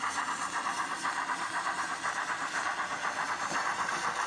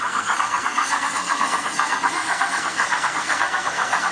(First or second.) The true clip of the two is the first